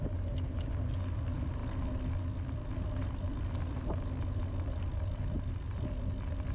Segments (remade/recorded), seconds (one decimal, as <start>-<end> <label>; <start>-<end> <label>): 0.0-6.5 recorded